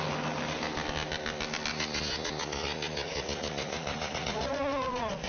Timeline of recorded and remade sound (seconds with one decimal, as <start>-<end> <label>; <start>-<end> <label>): 0.0-1.7 recorded; 1.7-5.3 remade